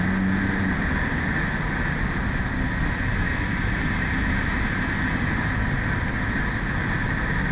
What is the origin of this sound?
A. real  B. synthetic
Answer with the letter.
A